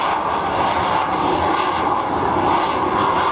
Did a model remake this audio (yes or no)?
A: no